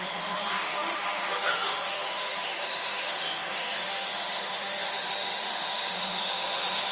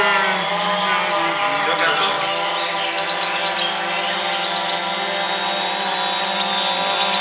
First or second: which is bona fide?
second